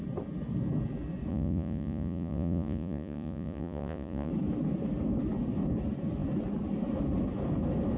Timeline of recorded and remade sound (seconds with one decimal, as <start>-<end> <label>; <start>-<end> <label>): 0.0-1.3 recorded; 1.3-4.3 remade; 4.3-8.0 recorded

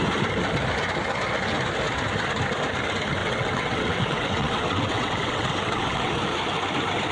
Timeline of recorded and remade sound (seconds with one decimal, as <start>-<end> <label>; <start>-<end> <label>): 0.0-3.2 recorded; 3.2-6.1 remade; 6.1-7.1 recorded

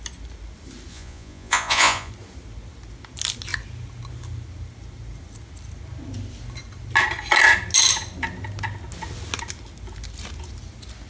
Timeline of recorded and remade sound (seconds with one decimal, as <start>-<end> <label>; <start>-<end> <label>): 0.0-0.9 recorded; 0.9-2.1 remade; 2.1-11.1 recorded

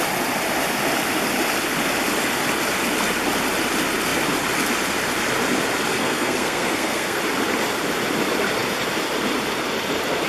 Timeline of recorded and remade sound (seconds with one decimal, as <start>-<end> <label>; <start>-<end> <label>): 0.0-5.9 recorded; 5.9-7.2 remade; 7.2-10.3 recorded